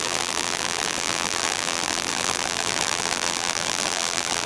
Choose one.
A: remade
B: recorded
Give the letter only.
A